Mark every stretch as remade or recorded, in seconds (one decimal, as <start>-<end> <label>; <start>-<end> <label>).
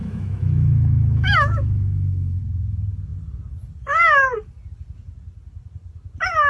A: 0.0-2.4 remade; 2.4-6.5 recorded